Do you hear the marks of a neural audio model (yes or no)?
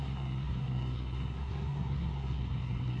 yes